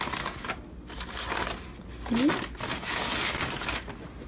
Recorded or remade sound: recorded